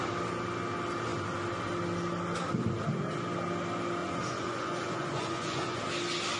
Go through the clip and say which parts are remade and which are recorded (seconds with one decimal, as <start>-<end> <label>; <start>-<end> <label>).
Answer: 0.0-4.0 recorded; 4.0-5.8 remade; 5.8-6.4 recorded

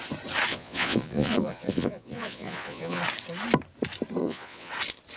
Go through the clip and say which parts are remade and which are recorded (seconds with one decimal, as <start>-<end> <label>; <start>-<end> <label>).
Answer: 0.0-0.5 recorded; 0.5-3.0 remade; 3.0-4.2 recorded; 4.2-4.7 remade; 4.7-5.2 recorded

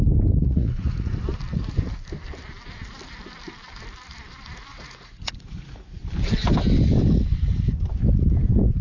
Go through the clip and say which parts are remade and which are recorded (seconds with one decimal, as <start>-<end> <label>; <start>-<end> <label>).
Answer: 0.0-0.4 recorded; 0.4-1.1 remade; 1.1-4.7 recorded; 4.7-6.0 remade; 6.0-8.8 recorded

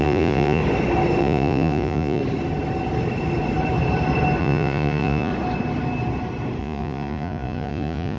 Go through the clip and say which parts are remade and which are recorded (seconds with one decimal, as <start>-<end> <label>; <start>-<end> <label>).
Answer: 0.0-0.6 remade; 0.6-1.2 recorded; 1.2-2.2 remade; 2.2-4.4 recorded; 4.4-5.3 remade; 5.3-6.6 recorded; 6.6-8.2 remade

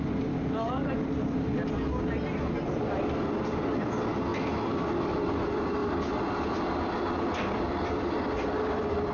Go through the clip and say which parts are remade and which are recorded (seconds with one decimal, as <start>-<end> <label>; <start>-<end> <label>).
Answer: 0.0-9.1 recorded

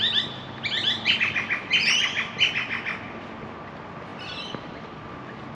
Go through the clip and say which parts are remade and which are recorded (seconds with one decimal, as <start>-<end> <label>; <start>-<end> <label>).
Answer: 0.0-5.5 recorded

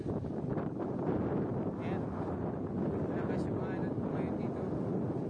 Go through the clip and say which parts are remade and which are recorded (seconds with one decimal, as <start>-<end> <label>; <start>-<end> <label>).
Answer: 0.0-5.3 recorded

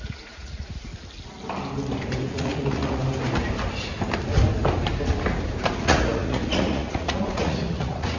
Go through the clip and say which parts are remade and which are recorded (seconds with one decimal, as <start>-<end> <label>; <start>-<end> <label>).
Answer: 0.0-0.9 remade; 0.9-2.3 recorded; 2.3-3.0 remade; 3.0-5.8 recorded; 5.8-8.2 remade